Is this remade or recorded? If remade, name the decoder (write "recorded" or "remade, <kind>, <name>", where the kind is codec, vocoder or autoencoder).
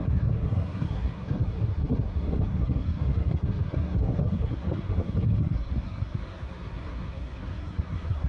remade, codec, SNAC